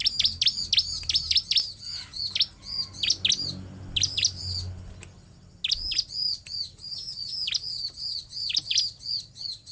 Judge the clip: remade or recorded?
recorded